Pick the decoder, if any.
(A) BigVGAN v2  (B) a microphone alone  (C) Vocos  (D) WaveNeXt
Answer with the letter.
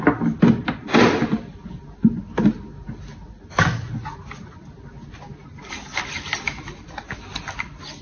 B